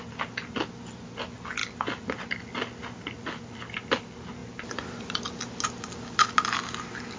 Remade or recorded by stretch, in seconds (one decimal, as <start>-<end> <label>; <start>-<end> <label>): 0.0-1.6 recorded; 1.6-2.8 remade; 2.8-7.2 recorded